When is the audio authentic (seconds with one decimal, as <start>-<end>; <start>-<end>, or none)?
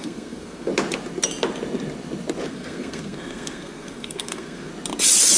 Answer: 0.7-2.5; 4.7-5.4